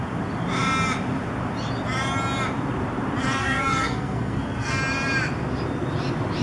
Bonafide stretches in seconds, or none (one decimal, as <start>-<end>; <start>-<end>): 0.0-3.2; 4.8-6.4